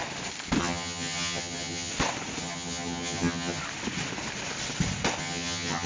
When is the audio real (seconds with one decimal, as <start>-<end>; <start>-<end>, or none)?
0.0-0.6; 1.9-2.4; 3.6-5.2